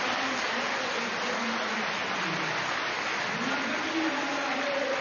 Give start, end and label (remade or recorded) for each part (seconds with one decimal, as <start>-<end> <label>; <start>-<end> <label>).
0.0-5.0 recorded